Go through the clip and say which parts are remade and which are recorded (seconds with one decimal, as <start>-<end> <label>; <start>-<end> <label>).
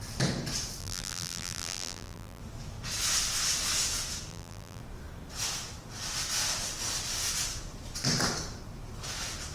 0.0-0.8 recorded; 0.8-2.4 remade; 2.4-4.3 recorded; 4.3-4.8 remade; 4.8-9.5 recorded